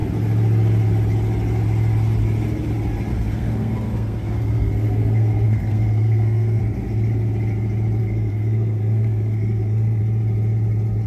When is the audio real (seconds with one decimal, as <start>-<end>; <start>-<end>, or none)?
0.0-3.1; 6.6-8.0; 10.0-11.1